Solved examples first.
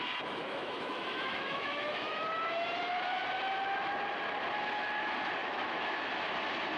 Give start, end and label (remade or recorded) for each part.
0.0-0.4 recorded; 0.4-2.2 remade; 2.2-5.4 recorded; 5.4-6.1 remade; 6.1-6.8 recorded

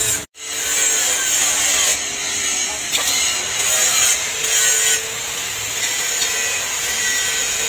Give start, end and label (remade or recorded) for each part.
0.0-7.7 recorded